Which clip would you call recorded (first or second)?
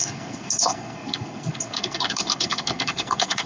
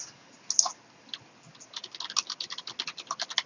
second